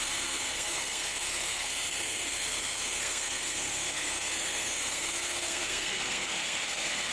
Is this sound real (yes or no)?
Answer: no